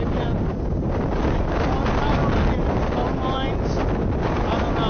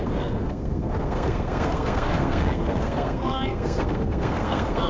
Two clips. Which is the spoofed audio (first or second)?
second